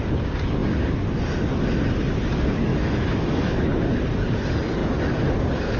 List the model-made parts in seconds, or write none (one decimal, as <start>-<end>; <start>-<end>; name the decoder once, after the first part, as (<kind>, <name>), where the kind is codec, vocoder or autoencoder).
2.7-3.7 (autoencoder, DAC-VAE)

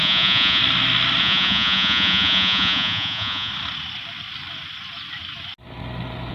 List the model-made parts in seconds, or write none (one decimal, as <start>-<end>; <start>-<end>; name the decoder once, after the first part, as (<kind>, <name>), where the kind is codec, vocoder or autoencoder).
0.0-0.6 (vocoder, Vocos); 1.2-3.5

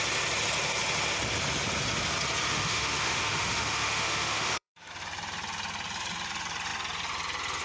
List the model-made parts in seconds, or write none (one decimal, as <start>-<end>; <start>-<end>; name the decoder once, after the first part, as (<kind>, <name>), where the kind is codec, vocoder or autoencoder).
2.5-4.9 (autoencoder, DAC-VAE)

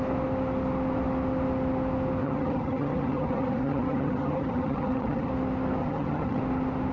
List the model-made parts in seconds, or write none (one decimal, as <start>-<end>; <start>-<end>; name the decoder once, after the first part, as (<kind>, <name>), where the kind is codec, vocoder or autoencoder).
2.2-5.3 (vocoder, HiFi-GAN); 5.8-6.4

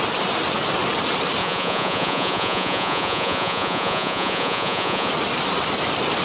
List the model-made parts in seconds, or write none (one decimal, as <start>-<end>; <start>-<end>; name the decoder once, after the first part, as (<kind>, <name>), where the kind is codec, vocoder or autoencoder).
1.4-5.1 (vocoder, Vocos)

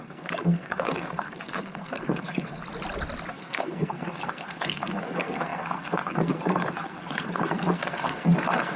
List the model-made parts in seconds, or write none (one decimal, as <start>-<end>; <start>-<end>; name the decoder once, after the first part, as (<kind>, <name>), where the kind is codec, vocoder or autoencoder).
0.0-2.6 (codec, SNAC); 3.3-8.8

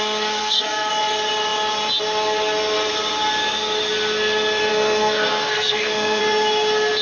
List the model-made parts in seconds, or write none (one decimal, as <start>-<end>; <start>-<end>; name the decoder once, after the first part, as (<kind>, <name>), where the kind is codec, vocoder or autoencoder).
0.4-0.9 (codec, SNAC); 4.7-6.2

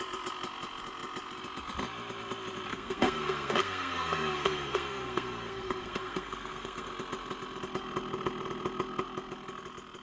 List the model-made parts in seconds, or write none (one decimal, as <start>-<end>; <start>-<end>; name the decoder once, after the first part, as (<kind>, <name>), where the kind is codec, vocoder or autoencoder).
2.7-6.9 (codec, SNAC)